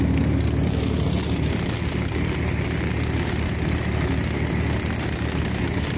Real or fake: real